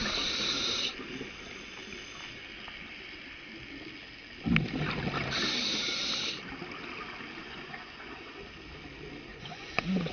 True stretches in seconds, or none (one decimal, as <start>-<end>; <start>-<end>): 0.0-7.4; 8.3-9.3